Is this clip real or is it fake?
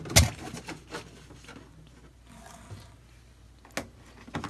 real